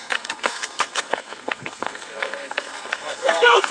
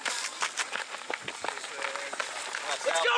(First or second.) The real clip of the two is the second